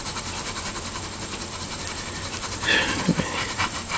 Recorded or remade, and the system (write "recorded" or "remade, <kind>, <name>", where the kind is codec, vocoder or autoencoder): remade, vocoder, BigVGAN v2